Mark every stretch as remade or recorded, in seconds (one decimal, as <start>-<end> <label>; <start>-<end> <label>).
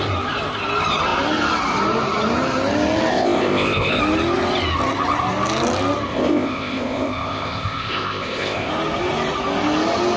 0.0-3.1 recorded; 3.1-4.0 remade; 4.0-6.1 recorded; 6.1-8.7 remade; 8.7-10.2 recorded